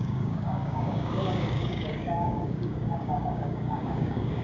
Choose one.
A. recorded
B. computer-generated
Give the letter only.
B